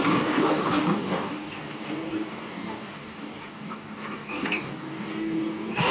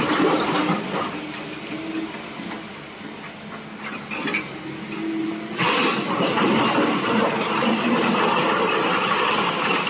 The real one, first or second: second